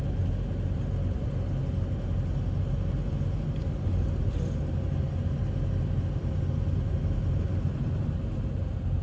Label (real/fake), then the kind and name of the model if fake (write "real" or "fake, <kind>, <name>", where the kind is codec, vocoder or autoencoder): real